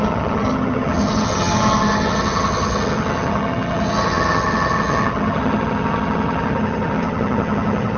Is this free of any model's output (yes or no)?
no